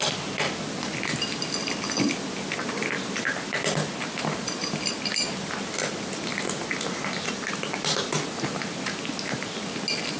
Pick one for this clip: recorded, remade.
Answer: recorded